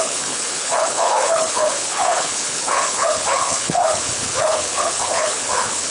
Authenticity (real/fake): fake